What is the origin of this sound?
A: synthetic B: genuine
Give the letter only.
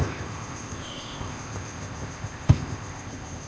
A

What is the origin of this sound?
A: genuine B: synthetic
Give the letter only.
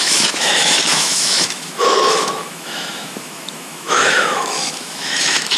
B